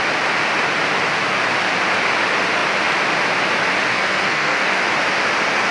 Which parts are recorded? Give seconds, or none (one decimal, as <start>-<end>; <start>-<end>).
0.0-3.9; 4.8-5.7